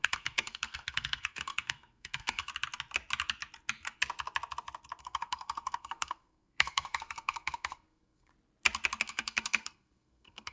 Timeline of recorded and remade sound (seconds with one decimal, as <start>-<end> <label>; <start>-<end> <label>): 0.0-2.5 remade; 2.5-5.0 recorded; 5.0-8.3 remade; 8.3-9.0 recorded; 9.0-10.5 remade